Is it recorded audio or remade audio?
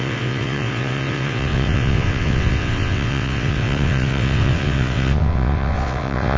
remade